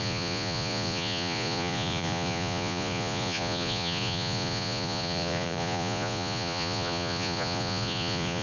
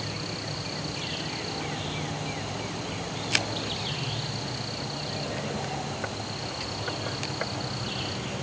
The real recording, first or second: second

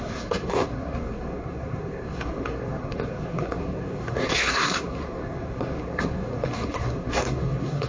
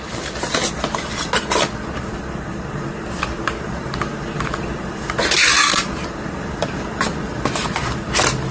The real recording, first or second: second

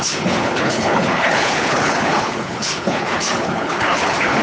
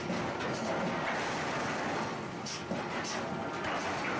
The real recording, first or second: second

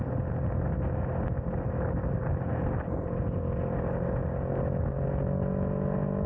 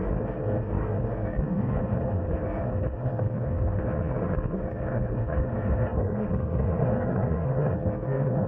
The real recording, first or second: first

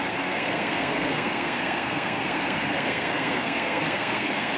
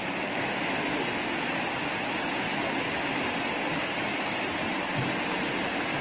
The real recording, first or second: second